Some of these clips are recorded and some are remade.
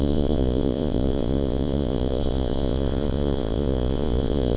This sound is remade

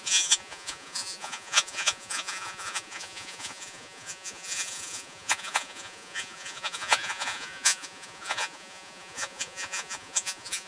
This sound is remade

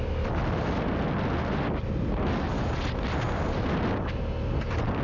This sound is recorded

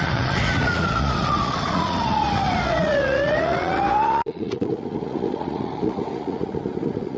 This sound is remade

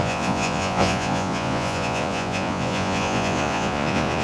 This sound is remade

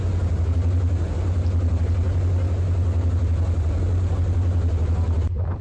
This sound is recorded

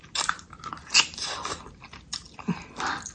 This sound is recorded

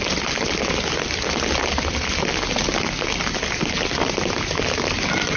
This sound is recorded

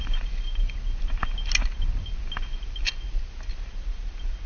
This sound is recorded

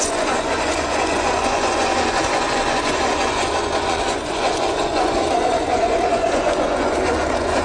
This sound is remade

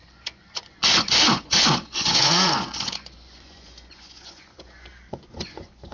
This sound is remade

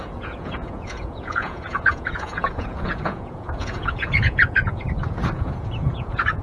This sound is remade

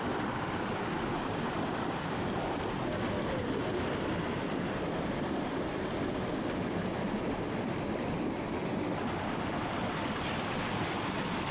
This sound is recorded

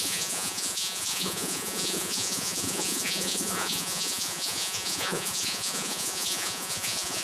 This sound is remade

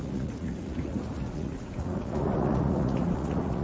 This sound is remade